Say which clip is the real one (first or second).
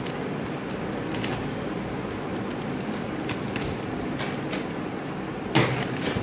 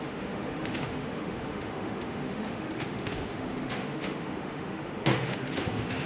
first